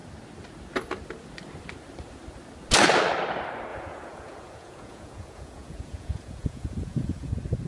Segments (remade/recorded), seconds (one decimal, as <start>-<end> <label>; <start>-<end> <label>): 0.0-3.7 recorded; 3.7-7.3 remade; 7.3-7.7 recorded